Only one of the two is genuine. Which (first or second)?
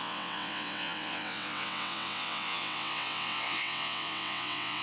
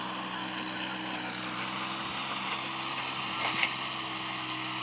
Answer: second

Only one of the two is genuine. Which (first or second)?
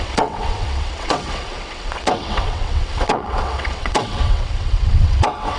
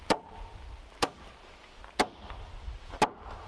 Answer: second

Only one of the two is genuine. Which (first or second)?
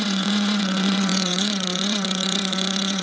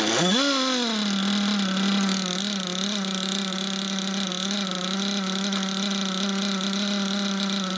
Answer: second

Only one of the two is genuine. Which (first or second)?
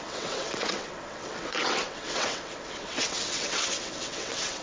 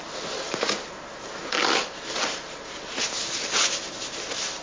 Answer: second